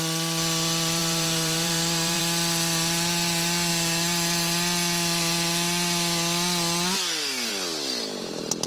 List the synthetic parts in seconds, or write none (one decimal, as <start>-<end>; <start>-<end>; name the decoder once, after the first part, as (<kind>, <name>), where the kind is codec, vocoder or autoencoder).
1.0-2.2 (vocoder, BigVGAN v2)